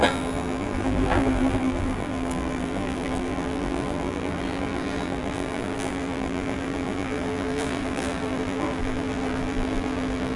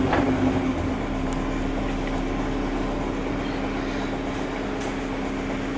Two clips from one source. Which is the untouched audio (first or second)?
second